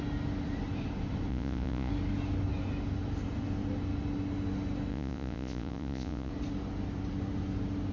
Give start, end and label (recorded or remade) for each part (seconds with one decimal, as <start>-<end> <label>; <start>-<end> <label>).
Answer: 0.0-1.3 recorded; 1.3-1.9 remade; 1.9-4.9 recorded; 4.9-6.3 remade; 6.3-7.9 recorded